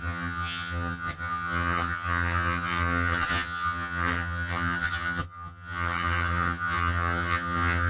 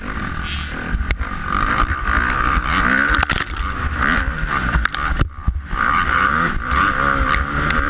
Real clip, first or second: second